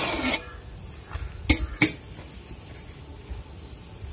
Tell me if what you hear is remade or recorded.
recorded